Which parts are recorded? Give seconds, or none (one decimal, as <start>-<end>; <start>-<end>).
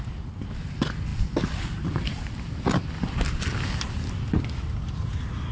0.0-5.5